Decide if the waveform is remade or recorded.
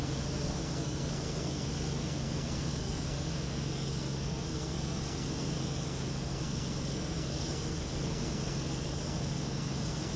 remade